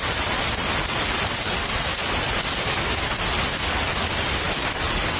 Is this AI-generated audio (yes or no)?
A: yes